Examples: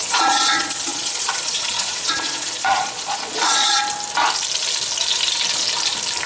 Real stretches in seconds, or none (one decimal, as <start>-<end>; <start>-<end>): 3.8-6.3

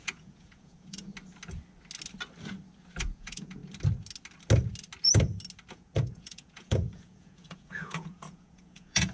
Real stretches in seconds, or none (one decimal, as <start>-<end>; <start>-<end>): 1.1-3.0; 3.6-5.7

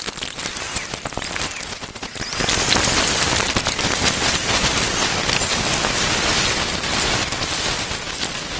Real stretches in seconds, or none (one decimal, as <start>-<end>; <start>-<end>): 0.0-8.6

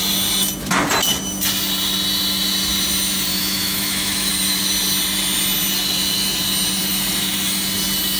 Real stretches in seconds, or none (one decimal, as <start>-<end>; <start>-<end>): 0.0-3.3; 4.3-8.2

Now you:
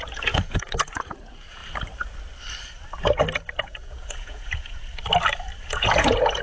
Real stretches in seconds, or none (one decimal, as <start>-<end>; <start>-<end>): 1.6-3.6; 4.8-5.6

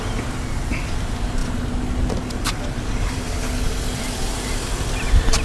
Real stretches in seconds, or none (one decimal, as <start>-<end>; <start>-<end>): 1.4-2.3